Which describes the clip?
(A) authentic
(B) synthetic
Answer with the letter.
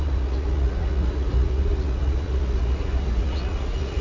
B